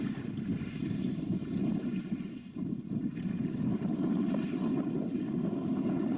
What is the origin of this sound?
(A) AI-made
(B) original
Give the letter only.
A